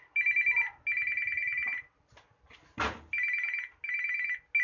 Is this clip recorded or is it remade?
recorded